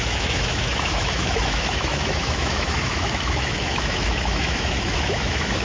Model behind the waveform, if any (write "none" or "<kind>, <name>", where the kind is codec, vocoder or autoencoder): autoencoder, DAC-VAE